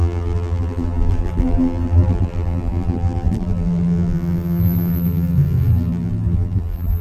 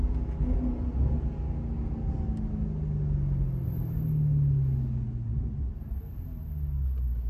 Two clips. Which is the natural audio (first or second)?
second